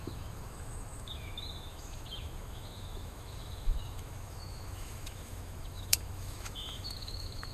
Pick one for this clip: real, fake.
fake